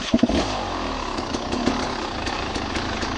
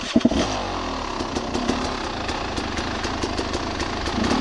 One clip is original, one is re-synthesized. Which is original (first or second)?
second